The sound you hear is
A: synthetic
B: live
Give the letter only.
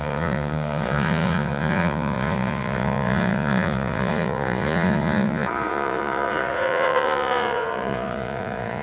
A